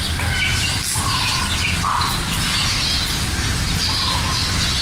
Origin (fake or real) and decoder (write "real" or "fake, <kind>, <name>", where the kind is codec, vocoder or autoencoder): real